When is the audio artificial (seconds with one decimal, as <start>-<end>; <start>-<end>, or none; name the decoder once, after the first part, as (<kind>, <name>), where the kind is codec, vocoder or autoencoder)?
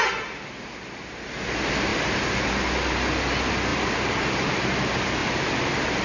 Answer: 3.7-4.7 (vocoder, BigVGAN v2); 5.2-6.0